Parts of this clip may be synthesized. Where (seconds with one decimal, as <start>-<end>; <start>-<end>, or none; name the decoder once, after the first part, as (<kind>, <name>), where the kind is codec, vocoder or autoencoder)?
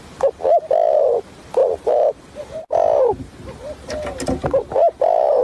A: 1.6-3.0 (vocoder, BigVGAN v2)